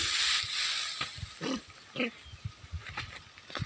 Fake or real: real